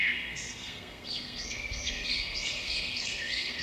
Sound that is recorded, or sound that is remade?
remade